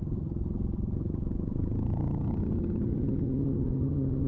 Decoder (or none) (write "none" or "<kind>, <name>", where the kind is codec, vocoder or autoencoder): vocoder, HiFi-GAN